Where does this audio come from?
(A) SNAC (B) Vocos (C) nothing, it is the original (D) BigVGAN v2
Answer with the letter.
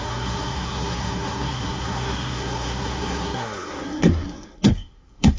A